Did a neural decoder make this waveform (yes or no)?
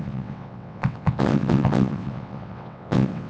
yes